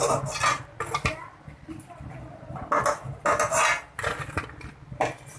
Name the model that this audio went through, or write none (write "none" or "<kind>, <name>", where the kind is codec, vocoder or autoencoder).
none